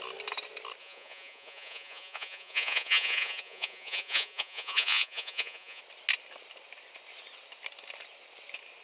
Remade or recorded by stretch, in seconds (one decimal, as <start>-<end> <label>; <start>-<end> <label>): 0.0-0.8 recorded; 0.8-5.8 remade; 5.8-8.8 recorded